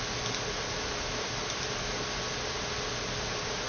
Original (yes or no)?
yes